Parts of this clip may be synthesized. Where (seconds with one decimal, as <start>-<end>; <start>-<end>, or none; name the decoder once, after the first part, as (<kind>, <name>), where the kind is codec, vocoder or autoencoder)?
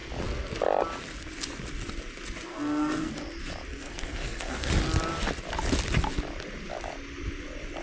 2.5-3.1 (codec, SNAC); 3.7-4.7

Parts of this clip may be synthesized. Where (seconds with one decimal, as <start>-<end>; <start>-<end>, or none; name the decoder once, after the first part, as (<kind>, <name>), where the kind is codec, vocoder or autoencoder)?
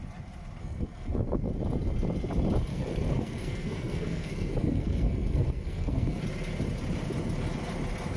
0.6-1.5 (codec, SNAC); 2.7-6.2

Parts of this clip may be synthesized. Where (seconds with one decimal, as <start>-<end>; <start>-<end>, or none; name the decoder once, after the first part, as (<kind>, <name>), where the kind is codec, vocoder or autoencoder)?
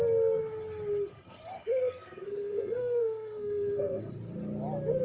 1.1-4.1 (codec, SNAC)